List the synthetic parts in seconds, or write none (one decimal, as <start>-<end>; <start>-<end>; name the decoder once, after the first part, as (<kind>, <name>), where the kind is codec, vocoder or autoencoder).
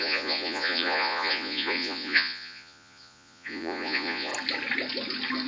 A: 0.0-4.3 (vocoder, Vocos)